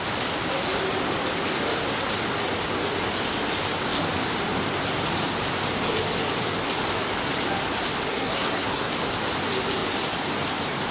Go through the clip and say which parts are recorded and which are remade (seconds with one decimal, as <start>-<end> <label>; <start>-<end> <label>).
0.0-8.1 recorded; 8.1-8.9 remade; 8.9-10.9 recorded